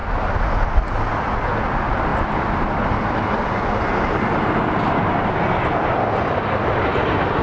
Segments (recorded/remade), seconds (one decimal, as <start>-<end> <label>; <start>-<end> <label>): 0.0-7.4 recorded